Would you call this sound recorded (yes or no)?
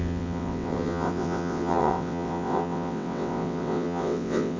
no